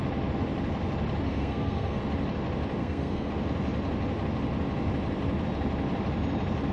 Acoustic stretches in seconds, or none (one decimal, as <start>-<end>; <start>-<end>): 0.0-1.3; 2.0-2.8; 3.3-6.7